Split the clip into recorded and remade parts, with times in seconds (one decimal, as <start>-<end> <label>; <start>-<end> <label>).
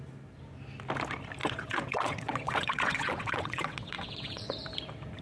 0.0-1.4 recorded; 1.4-4.5 remade; 4.5-5.2 recorded